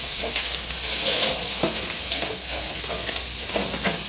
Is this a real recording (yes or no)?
no